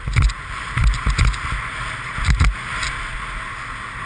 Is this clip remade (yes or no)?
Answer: no